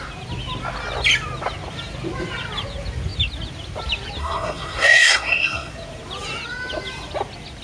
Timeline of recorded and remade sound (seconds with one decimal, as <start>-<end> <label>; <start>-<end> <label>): 0.0-4.2 recorded; 4.2-5.7 remade; 5.7-7.6 recorded